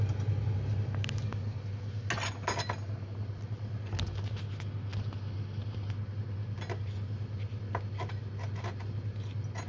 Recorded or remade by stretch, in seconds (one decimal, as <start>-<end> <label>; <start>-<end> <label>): 0.0-9.7 recorded